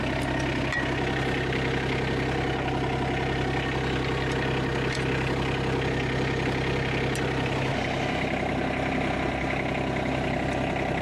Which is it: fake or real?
real